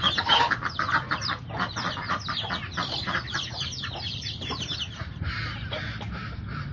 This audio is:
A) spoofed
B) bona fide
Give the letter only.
A